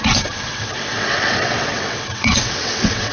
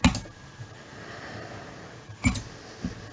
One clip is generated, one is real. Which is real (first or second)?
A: second